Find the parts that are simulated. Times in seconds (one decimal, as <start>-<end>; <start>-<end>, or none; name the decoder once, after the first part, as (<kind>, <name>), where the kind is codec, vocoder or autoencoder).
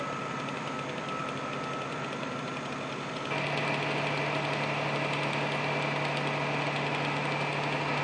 none